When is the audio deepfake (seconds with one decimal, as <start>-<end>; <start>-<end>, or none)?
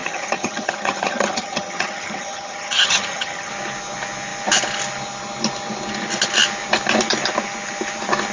0.0-3.5